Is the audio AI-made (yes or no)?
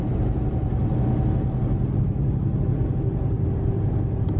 no